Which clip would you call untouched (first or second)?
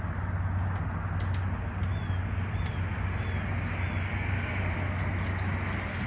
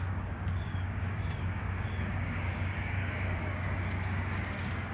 first